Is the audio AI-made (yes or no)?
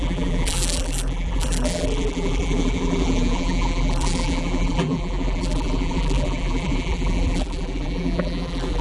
yes